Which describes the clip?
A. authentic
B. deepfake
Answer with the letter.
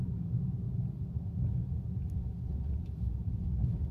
A